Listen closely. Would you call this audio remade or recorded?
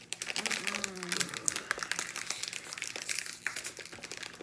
recorded